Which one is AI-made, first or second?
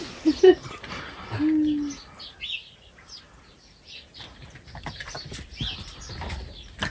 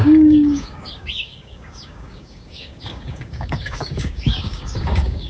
second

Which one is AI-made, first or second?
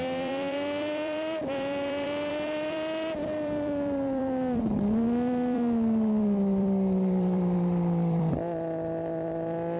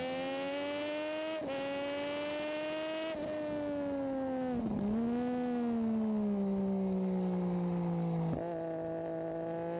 first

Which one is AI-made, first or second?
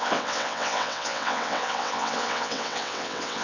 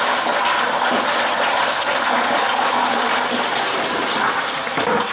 first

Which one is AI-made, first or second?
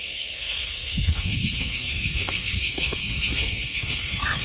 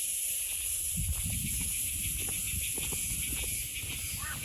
first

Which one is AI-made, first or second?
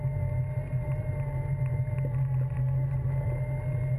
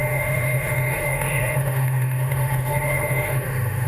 second